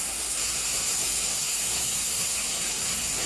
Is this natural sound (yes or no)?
no